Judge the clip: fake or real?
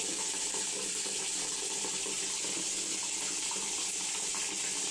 real